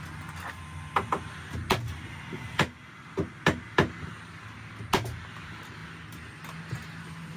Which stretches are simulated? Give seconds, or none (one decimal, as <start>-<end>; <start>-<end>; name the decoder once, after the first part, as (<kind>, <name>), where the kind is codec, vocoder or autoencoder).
none